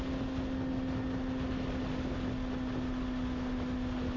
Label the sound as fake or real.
real